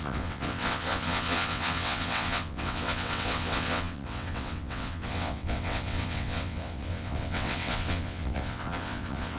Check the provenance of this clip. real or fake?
fake